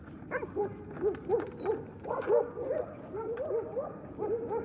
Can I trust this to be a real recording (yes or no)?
yes